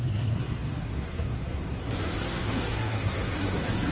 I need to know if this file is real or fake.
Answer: fake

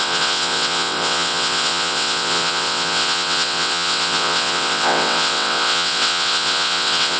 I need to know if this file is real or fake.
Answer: fake